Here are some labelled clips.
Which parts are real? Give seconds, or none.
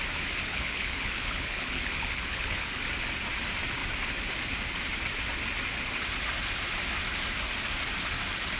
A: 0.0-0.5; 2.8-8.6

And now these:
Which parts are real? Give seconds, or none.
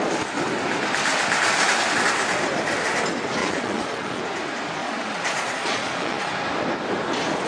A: 0.0-3.4; 4.2-4.8; 6.3-7.5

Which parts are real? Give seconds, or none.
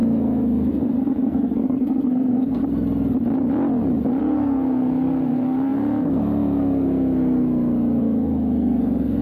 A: 2.6-4.2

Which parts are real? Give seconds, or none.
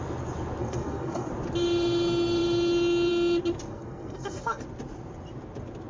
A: 0.0-0.6; 1.3-3.7; 4.6-5.9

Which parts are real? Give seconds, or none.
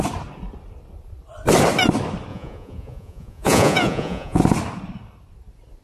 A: 0.0-2.3; 4.4-5.8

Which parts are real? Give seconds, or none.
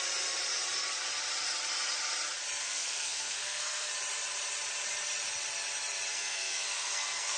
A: 0.0-2.6; 3.9-6.1